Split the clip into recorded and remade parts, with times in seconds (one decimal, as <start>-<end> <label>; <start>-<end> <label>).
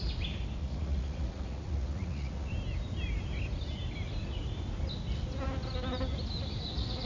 0.0-0.6 recorded; 0.6-2.5 remade; 2.5-7.1 recorded